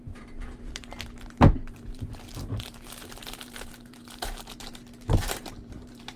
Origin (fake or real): fake